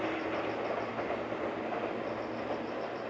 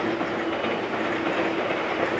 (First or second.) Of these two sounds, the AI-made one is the second